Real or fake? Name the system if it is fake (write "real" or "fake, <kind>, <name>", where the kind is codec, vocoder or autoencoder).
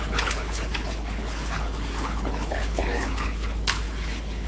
fake, codec, HILCodec